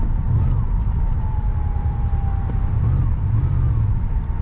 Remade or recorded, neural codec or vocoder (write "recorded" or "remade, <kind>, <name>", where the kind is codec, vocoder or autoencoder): remade, vocoder, BigVGAN v2